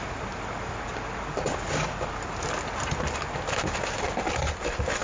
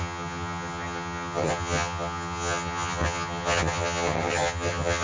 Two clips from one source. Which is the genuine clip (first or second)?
first